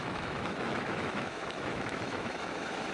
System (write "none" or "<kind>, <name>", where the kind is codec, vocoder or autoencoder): autoencoder, DAC-VAE